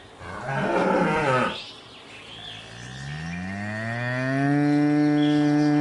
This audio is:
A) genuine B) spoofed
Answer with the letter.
A